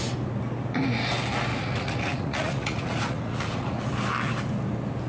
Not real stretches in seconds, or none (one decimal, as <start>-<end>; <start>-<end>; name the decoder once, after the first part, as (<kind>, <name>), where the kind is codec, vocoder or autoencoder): 1.5-3.8 (vocoder, Vocos)